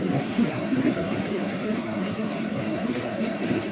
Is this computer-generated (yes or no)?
yes